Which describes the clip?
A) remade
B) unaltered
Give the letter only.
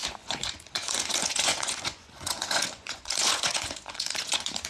A